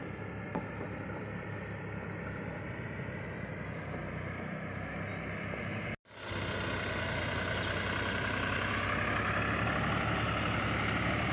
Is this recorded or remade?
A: recorded